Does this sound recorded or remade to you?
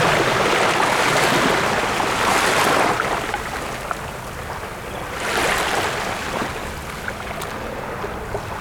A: recorded